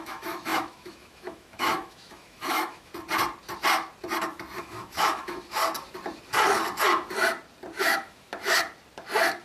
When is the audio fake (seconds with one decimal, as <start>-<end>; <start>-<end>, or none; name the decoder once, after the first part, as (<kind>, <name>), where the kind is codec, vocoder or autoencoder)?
0.0-2.9 (autoencoder, DAC-VAE); 4.6-5.6; 7.8-8.3